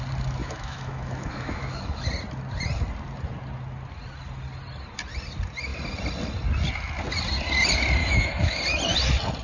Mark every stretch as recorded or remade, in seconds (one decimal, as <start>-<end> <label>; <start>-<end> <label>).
0.0-0.4 recorded; 0.4-2.1 remade; 2.1-8.0 recorded; 8.0-8.6 remade; 8.6-9.4 recorded